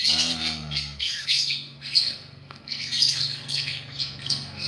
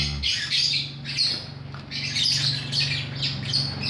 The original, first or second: second